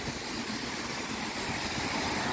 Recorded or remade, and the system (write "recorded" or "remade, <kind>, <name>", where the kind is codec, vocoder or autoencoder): recorded